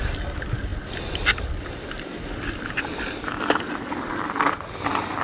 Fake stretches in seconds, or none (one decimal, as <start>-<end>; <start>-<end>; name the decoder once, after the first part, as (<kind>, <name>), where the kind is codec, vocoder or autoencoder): none